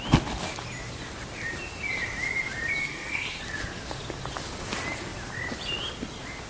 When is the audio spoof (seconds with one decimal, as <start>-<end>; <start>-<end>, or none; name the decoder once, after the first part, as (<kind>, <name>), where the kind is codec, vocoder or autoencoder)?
2.8-3.4 (codec, SNAC)